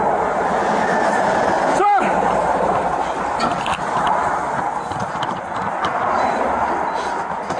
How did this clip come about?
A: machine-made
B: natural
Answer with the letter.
B